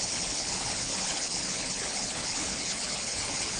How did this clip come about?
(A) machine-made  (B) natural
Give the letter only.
A